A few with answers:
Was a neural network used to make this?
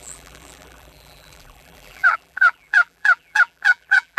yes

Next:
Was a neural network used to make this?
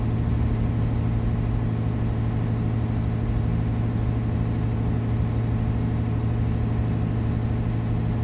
no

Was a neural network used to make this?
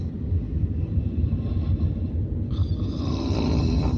no